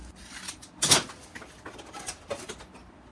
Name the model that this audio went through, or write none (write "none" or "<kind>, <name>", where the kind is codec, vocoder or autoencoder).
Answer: none